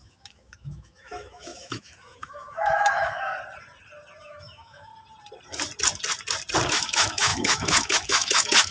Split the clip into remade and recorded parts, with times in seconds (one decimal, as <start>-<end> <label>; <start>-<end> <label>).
0.0-3.3 remade; 3.3-4.2 recorded; 4.2-4.9 remade; 4.9-6.7 recorded; 6.7-8.7 remade